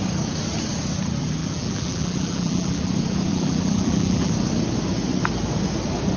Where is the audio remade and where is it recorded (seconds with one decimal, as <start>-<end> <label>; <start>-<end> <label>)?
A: 0.0-1.4 recorded; 1.4-2.9 remade; 2.9-3.3 recorded; 3.3-4.3 remade; 4.3-6.2 recorded